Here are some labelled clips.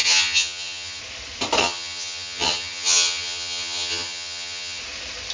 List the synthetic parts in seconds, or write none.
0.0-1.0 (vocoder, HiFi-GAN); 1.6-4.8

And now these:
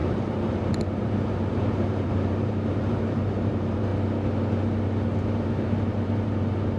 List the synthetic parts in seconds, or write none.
0.0-3.9 (vocoder, BigVGAN v2); 5.2-6.8

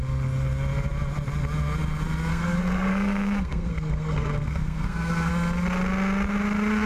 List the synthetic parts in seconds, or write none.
2.3-5.3 (codec, SNAC)

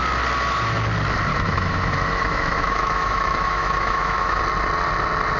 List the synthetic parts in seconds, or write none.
1.3-4.4 (autoencoder, DAC-VAE)

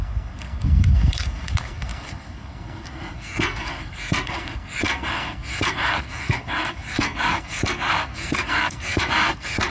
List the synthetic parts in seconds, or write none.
0.0-9.7 (codec, SNAC)

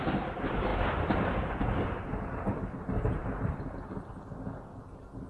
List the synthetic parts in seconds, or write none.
0.7-2.5 (vocoder, BigVGAN v2)

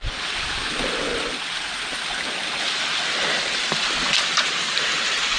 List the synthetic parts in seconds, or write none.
0.0-1.1 (vocoder, BigVGAN v2); 4.3-5.4

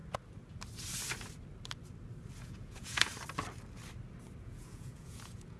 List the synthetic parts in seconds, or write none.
2.4-3.1 (vocoder, Vocos); 4.4-5.6